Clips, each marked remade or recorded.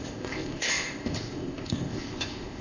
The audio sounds remade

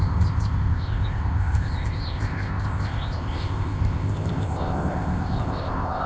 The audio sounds remade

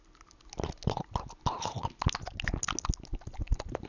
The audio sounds recorded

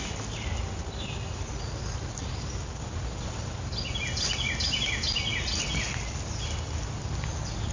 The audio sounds recorded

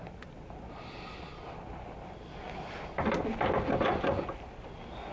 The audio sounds recorded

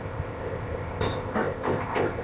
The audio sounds remade